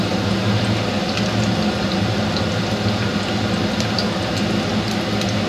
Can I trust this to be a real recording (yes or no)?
yes